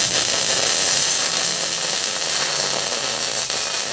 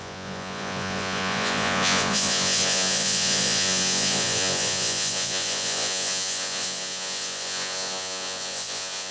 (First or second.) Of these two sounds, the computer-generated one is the second